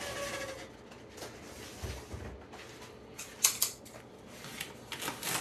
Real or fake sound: real